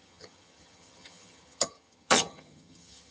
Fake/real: fake